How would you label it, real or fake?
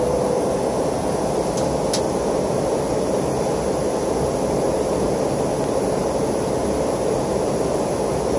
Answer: real